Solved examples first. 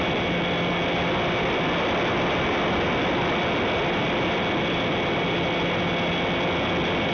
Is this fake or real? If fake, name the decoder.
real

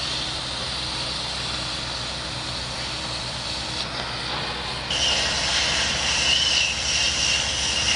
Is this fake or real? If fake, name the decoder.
real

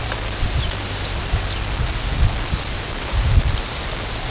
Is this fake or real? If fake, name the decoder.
real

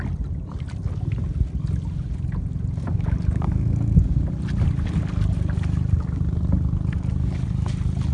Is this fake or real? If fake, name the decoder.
real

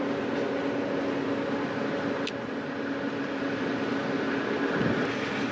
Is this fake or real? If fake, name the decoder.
real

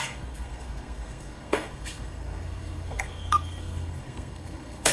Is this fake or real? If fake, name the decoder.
fake, codec, SNAC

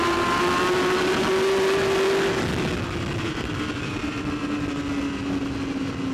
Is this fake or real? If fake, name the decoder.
real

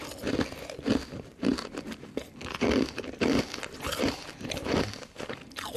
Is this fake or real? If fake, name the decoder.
real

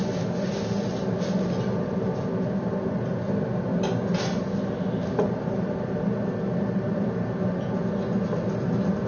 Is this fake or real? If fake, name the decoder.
real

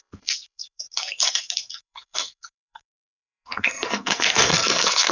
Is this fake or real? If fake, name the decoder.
fake, codec, SNAC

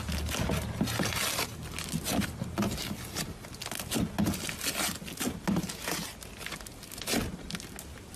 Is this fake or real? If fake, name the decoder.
real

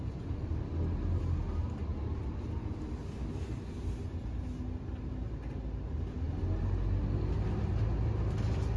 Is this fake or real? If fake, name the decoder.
real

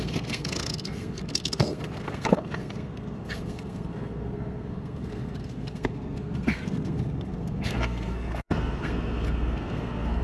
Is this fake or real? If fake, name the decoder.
fake, codec, SNAC